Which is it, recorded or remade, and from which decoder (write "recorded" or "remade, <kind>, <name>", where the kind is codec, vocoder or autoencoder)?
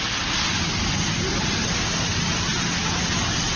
recorded